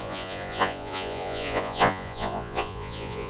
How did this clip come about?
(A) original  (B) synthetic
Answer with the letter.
B